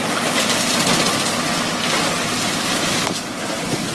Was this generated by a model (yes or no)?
no